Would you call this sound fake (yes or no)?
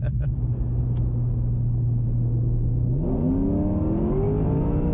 no